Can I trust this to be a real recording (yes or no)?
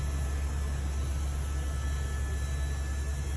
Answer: yes